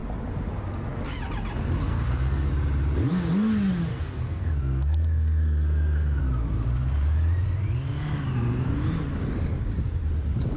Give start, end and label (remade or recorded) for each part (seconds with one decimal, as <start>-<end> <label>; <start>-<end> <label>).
0.0-1.9 recorded; 1.9-2.5 remade; 2.5-3.9 recorded; 3.9-6.2 remade; 6.2-10.6 recorded